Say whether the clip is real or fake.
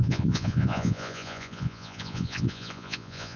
fake